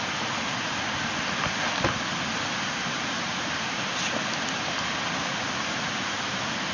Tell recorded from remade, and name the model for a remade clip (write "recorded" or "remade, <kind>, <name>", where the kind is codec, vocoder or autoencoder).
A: recorded